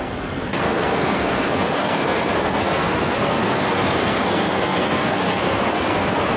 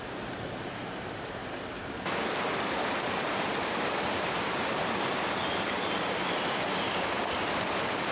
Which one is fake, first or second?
first